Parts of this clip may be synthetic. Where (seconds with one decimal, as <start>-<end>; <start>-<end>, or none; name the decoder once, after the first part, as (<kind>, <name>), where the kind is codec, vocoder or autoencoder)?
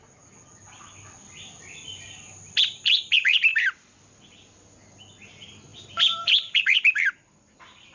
1.9-3.1 (vocoder, BigVGAN v2); 3.5-4.0; 5.7-6.6